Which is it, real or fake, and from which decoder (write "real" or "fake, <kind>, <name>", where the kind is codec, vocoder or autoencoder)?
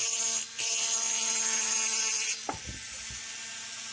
real